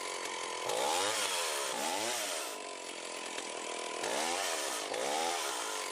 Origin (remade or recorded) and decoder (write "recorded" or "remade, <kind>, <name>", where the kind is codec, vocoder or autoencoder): recorded